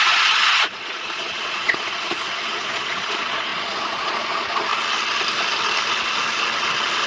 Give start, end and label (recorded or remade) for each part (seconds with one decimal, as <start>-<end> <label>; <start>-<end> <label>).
0.0-4.7 remade; 4.7-7.1 recorded